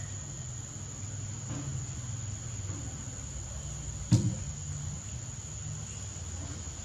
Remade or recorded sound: recorded